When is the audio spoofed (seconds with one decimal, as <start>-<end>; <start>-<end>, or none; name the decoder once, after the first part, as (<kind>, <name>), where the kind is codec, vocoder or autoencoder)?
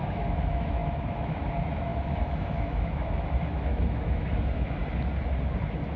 0.0-4.8 (autoencoder, DAC-VAE)